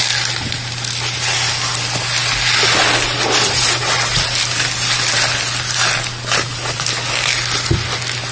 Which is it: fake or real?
real